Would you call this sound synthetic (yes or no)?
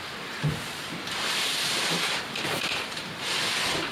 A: no